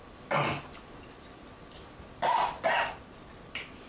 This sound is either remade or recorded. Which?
recorded